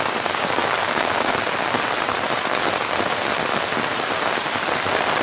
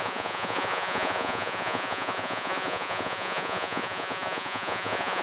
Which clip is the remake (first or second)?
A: second